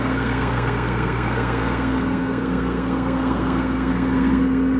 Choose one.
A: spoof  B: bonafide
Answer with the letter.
A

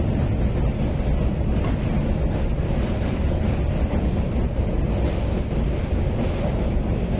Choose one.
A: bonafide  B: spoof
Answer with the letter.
A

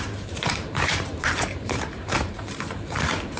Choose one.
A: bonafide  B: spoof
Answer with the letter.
B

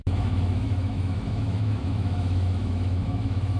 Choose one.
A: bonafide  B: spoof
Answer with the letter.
B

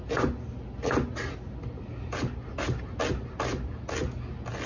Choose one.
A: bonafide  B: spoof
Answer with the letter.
A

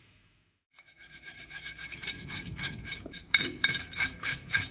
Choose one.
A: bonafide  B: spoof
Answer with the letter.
B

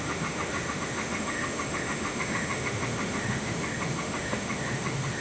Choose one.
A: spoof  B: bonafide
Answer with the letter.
A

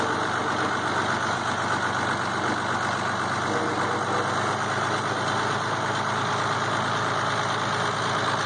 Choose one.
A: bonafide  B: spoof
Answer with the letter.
A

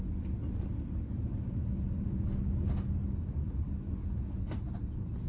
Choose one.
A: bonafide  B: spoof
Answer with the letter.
A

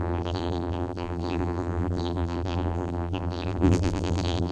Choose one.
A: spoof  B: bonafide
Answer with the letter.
A